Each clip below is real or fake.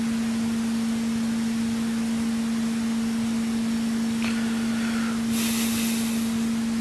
real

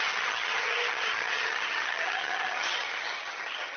fake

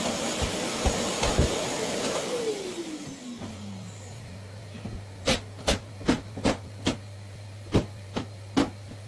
real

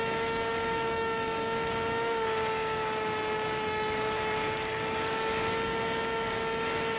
fake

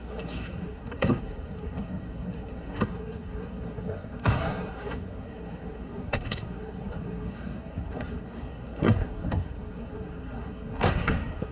fake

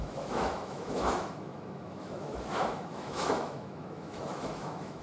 fake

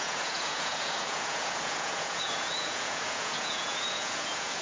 fake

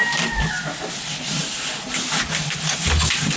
real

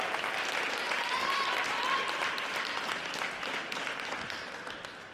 real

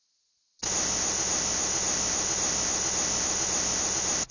real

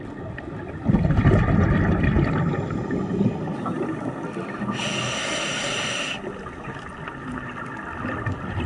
real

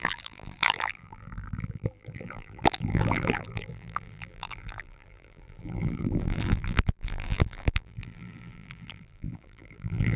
fake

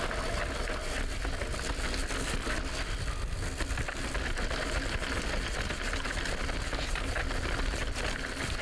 real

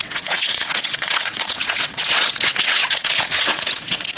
fake